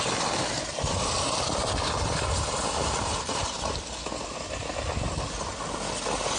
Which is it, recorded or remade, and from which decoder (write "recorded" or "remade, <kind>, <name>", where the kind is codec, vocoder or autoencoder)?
recorded